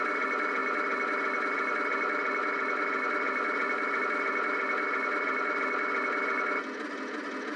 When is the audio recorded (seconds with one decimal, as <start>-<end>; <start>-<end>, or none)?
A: 0.0-7.6